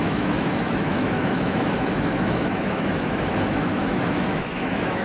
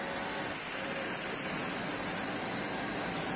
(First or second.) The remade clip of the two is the first